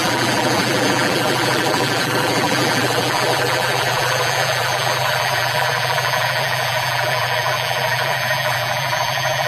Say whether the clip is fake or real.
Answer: fake